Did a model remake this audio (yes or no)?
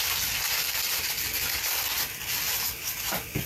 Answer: no